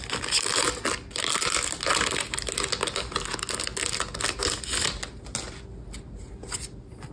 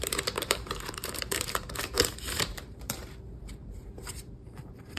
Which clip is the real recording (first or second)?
first